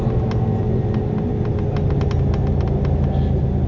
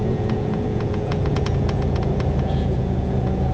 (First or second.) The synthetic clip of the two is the second